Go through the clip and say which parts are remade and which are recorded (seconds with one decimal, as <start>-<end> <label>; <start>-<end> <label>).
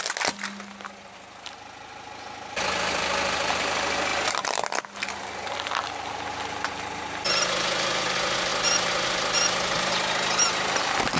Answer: 0.0-11.2 recorded